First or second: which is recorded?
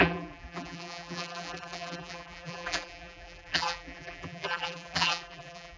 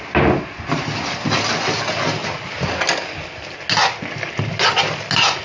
second